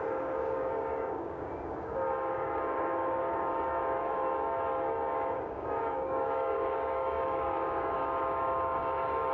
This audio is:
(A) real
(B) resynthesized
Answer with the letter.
B